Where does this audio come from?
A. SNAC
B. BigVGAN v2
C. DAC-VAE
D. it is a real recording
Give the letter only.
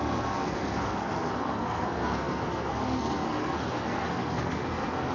A